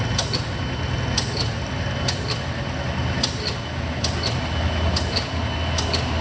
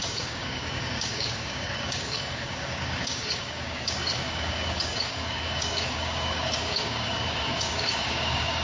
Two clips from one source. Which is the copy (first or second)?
second